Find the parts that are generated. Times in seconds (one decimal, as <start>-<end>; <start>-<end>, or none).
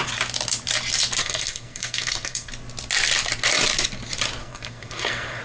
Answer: 1.2-2.5; 4.4-5.4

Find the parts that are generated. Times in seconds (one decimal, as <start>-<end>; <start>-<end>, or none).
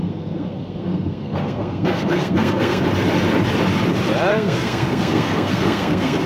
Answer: 0.0-2.8; 4.3-6.3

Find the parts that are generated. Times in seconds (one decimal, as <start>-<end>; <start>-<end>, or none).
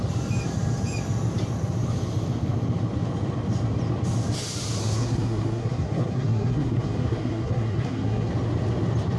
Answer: 4.8-8.3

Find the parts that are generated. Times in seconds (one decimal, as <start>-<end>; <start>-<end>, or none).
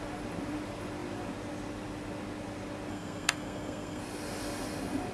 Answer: 2.9-4.0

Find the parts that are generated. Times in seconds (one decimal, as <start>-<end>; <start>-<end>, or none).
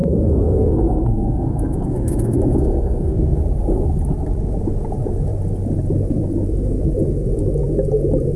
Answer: 0.0-3.4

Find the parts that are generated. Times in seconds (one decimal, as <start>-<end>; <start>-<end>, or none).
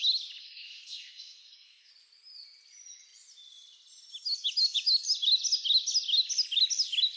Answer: 0.4-1.9